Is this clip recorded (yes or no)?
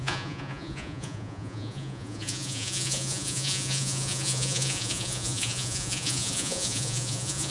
no